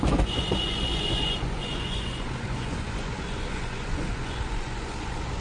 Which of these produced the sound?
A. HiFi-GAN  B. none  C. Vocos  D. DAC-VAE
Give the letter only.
C